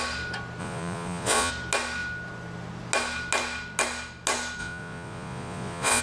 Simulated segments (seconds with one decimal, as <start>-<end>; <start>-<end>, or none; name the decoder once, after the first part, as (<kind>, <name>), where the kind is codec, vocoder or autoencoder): 0.6-1.5 (vocoder, Vocos); 4.6-6.0